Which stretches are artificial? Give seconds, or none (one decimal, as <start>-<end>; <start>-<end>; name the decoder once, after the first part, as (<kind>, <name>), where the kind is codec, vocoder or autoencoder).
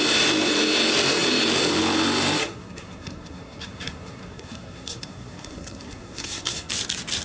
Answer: 2.4-6.7 (codec, SNAC)